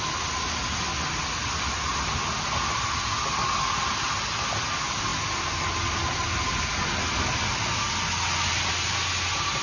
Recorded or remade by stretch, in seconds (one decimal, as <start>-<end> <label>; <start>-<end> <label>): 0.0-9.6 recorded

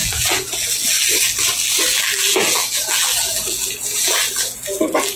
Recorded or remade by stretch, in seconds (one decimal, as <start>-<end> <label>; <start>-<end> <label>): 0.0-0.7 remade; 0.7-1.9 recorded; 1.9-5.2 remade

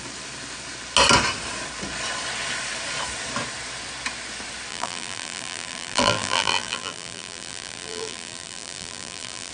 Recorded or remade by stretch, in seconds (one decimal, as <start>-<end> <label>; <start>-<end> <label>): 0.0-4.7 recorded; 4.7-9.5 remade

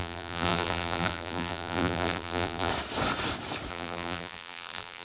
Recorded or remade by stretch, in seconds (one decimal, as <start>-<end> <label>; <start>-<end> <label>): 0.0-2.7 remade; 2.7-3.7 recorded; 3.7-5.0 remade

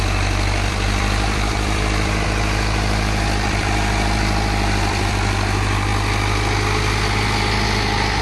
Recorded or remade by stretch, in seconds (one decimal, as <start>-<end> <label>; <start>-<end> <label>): 0.0-5.9 remade; 5.9-8.2 recorded

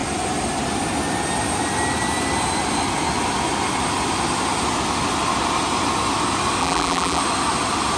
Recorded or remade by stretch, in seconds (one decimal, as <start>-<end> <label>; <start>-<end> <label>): 0.0-6.6 recorded; 6.6-7.2 remade; 7.2-8.0 recorded

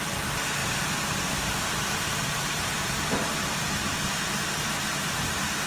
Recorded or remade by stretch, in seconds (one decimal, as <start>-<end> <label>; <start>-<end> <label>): 0.0-0.6 recorded; 0.6-4.0 remade; 4.0-5.7 recorded

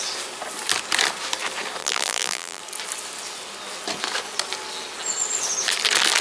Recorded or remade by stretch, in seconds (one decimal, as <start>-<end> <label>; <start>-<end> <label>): 0.0-1.8 recorded; 1.8-2.6 remade; 2.6-6.2 recorded